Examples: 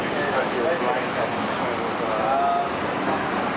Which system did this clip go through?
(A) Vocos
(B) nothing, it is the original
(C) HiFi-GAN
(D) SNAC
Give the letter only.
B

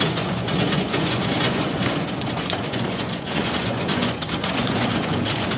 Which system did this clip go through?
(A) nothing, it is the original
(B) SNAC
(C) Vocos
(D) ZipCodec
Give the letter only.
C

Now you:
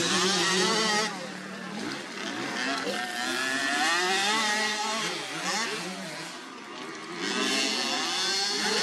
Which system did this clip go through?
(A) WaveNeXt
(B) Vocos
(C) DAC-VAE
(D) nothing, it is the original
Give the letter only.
D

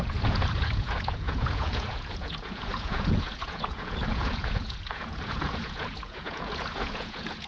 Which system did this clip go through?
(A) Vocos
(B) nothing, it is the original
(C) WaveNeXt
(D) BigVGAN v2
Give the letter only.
A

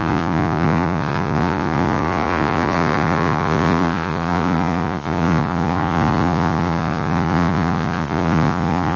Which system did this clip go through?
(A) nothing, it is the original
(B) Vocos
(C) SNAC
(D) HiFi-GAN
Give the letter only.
B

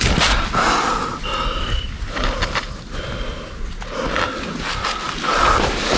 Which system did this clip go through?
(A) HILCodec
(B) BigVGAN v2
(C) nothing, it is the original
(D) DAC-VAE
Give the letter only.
C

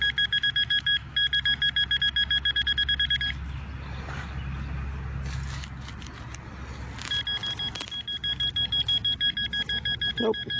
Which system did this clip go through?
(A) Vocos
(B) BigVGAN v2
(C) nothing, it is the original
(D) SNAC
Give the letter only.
C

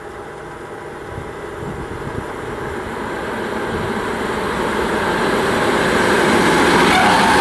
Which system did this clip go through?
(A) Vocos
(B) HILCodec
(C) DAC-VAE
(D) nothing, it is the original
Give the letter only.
D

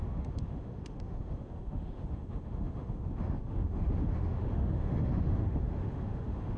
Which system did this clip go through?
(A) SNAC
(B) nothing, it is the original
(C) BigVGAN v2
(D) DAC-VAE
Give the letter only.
D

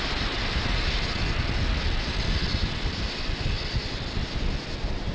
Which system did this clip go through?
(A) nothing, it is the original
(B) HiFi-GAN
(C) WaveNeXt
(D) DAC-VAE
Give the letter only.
A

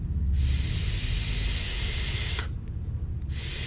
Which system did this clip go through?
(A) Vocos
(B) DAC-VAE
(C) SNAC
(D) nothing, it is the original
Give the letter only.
D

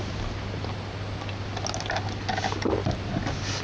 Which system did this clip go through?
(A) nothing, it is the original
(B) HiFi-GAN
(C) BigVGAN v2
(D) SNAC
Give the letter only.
A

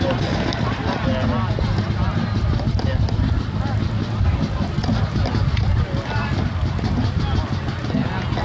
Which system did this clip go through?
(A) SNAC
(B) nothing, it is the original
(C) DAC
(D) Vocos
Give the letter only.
B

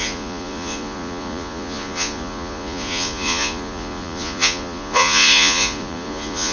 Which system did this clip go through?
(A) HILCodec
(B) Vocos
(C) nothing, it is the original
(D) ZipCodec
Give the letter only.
B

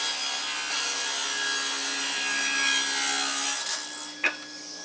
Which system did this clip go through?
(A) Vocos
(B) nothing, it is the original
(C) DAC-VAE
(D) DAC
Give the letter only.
B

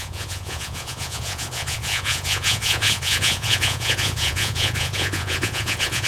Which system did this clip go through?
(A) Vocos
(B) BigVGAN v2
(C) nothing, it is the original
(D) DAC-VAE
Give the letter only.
A